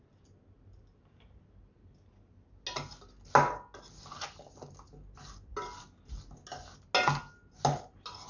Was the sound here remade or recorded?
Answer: recorded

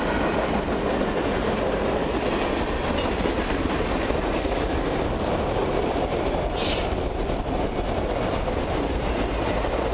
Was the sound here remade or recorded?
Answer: recorded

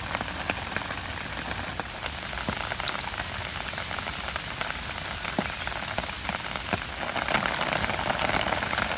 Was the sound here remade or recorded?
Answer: recorded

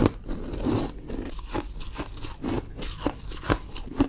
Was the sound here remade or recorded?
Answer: recorded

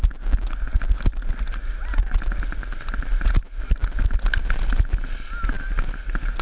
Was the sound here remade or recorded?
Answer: recorded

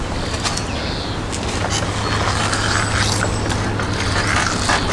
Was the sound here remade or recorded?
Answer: recorded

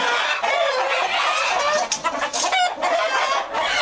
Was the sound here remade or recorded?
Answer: recorded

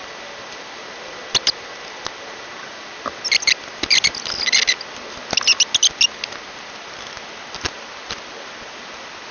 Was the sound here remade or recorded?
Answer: recorded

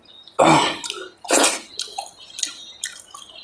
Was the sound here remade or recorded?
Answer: recorded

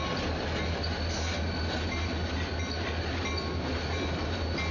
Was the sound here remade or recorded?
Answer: recorded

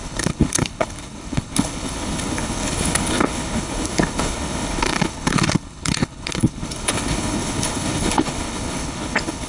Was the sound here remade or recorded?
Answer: remade